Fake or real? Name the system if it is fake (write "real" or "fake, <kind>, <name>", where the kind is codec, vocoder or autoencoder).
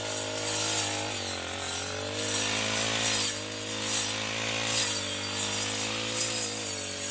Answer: real